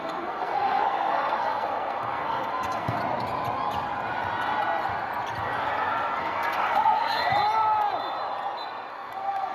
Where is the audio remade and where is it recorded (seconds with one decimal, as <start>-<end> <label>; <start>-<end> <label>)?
0.0-3.0 remade; 3.0-6.2 recorded; 6.2-7.2 remade; 7.2-8.9 recorded; 8.9-9.5 remade